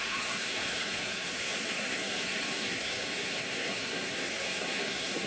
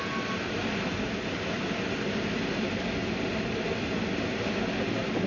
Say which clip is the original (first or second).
second